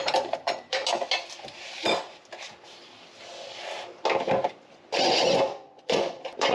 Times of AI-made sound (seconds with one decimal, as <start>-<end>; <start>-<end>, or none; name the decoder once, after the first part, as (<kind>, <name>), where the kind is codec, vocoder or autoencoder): 0.0-0.8 (vocoder, Vocos); 4.7-6.5